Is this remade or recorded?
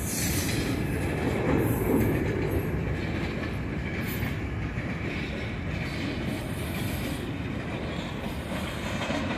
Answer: recorded